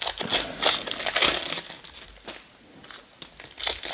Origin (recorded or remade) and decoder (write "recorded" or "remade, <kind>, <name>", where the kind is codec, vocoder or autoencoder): recorded